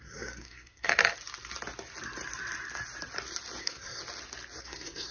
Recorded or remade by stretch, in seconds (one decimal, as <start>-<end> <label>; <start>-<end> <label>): 0.0-1.0 remade; 1.0-3.6 recorded; 3.6-4.0 remade; 4.0-4.6 recorded; 4.6-5.1 remade